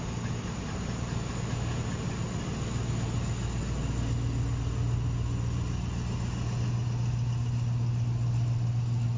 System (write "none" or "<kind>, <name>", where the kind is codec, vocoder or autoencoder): none